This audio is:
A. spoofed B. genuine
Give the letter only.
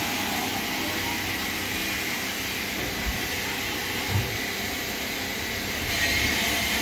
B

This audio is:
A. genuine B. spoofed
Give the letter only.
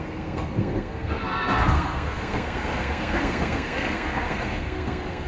B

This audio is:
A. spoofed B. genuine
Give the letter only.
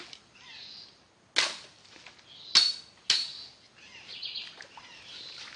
B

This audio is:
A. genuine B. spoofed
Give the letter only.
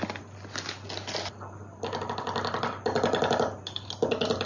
A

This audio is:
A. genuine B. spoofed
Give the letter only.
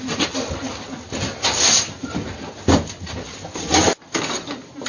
A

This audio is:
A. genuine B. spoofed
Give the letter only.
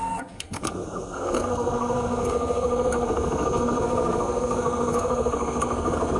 B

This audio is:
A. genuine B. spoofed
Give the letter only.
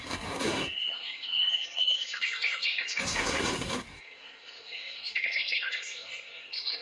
B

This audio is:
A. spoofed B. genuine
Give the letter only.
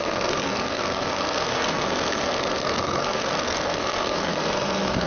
A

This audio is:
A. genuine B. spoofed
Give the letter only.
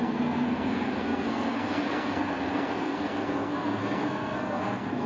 B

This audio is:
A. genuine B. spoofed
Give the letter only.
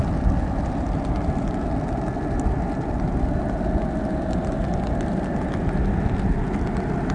A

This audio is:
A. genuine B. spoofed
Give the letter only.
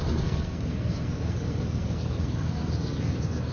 B